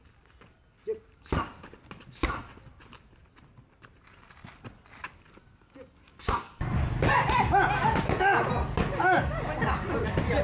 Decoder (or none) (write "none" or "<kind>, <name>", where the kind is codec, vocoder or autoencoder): none